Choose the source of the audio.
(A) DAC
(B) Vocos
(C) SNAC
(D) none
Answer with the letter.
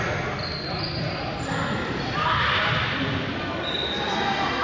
D